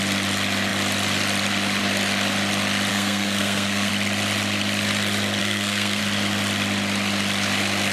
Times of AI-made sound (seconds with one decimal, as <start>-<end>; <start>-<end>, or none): 2.9-3.9; 5.4-6.0